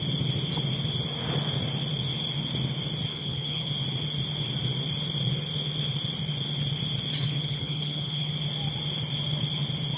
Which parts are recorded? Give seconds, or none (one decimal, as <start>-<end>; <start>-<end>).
0.0-3.1; 3.7-7.2; 8.3-10.0